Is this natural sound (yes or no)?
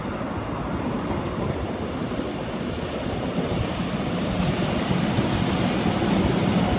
yes